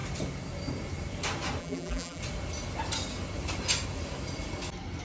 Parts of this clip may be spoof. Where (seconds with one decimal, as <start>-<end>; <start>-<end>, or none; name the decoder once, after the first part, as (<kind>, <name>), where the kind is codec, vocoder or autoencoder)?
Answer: 1.6-2.2 (vocoder, BigVGAN v2)

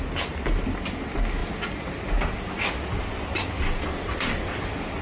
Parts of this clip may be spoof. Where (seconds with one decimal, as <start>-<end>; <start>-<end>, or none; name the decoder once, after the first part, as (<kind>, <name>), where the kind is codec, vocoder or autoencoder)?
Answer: none